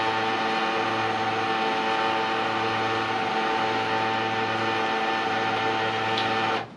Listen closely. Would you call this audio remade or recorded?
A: recorded